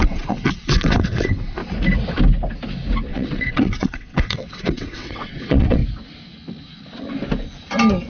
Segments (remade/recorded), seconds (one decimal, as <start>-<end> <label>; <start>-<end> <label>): 0.0-1.6 remade; 1.6-3.1 recorded; 3.1-5.8 remade; 5.8-8.1 recorded